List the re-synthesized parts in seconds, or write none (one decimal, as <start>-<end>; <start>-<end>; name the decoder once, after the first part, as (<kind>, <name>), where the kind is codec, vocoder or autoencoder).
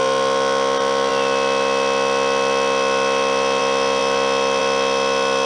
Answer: none